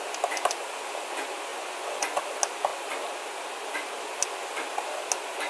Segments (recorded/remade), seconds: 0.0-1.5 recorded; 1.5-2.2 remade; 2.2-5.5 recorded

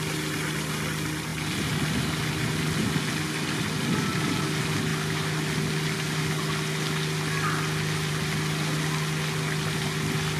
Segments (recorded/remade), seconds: 0.0-10.4 recorded

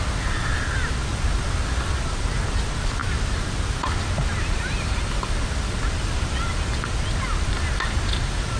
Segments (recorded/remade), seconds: 0.0-8.6 recorded

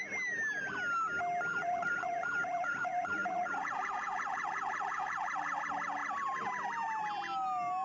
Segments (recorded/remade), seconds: 0.0-1.5 recorded; 1.5-5.6 remade; 5.6-7.8 recorded

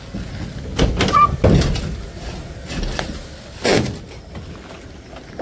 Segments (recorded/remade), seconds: 0.0-1.1 recorded; 1.1-3.1 remade; 3.1-3.7 recorded; 3.7-4.4 remade; 4.4-5.4 recorded

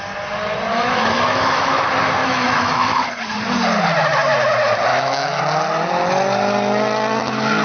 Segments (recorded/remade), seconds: 0.0-0.7 recorded; 0.7-1.6 remade; 1.6-2.2 recorded; 2.2-3.1 remade; 3.1-4.9 recorded; 4.9-5.4 remade; 5.4-7.6 recorded

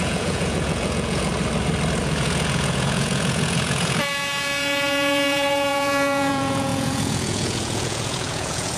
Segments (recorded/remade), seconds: 0.0-1.3 remade; 1.3-2.0 recorded; 2.0-8.8 remade

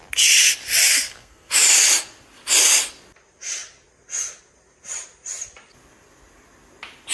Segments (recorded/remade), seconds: 0.0-0.9 recorded; 0.9-1.5 remade; 1.5-7.1 recorded